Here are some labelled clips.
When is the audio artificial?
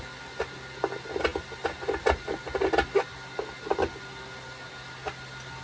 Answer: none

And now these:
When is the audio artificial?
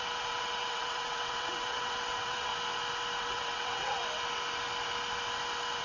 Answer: 0.0-2.5; 3.2-4.0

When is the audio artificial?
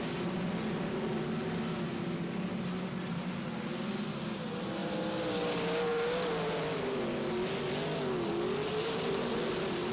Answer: 8.6-9.3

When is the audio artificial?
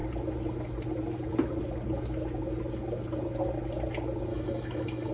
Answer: 4.3-5.1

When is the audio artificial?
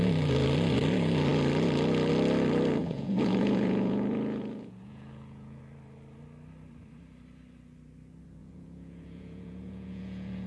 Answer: 2.8-5.6; 8.4-10.5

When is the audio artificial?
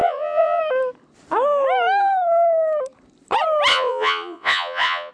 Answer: 0.0-0.6; 3.7-5.1